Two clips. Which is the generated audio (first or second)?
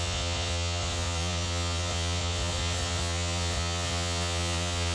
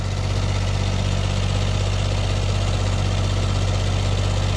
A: first